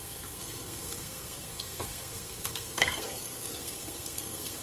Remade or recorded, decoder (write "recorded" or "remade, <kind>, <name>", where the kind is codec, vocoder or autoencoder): remade, codec, SNAC